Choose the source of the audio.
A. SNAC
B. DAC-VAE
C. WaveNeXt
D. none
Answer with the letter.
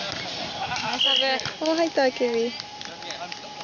D